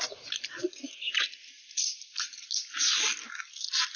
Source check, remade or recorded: recorded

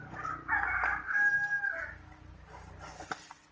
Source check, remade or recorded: recorded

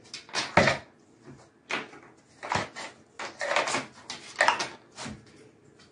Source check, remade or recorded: recorded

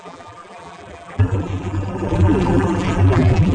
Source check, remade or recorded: remade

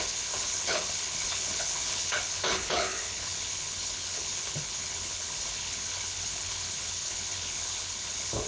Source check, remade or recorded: remade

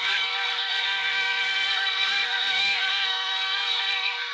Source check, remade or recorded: remade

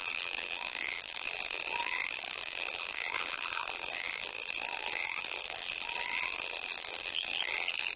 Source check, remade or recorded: remade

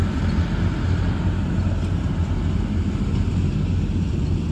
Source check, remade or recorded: recorded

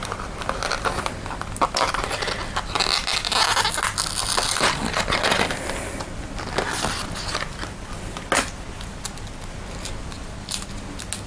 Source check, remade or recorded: recorded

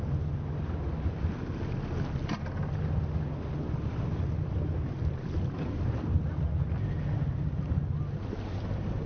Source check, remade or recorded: recorded